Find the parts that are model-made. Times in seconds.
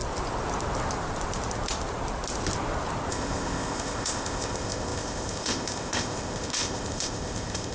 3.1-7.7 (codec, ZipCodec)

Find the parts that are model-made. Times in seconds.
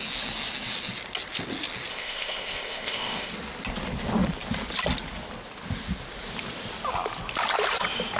1.9-3.3 (codec, ZipCodec)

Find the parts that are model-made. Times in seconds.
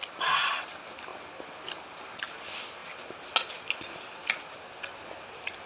none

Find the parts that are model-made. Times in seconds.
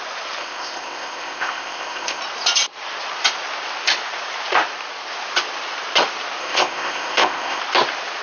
0.4-2.2 (codec, ZipCodec); 6.4-7.6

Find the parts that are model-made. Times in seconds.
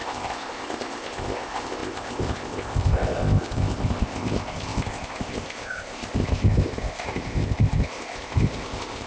0.0-9.1 (codec, ZipCodec)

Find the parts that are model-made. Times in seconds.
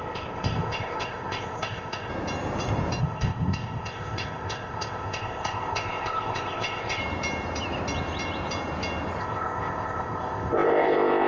0.0-2.1 (codec, ZipCodec); 3.0-7.0; 9.2-11.3